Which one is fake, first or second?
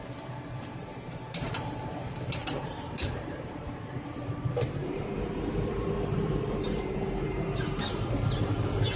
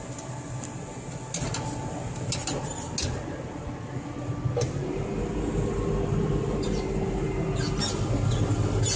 first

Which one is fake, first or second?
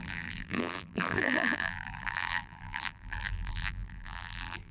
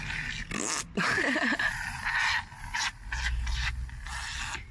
first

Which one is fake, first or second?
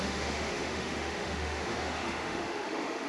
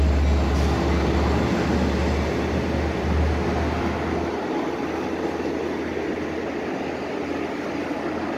first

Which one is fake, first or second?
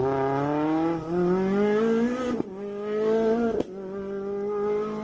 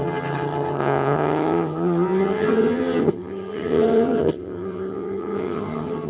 second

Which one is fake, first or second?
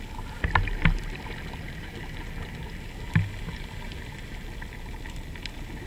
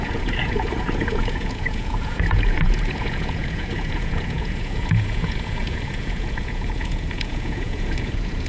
second